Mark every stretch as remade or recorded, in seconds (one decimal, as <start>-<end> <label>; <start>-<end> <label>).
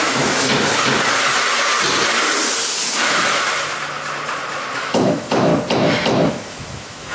0.0-0.5 remade; 0.5-4.8 recorded; 4.8-5.5 remade; 5.5-6.3 recorded; 6.3-7.1 remade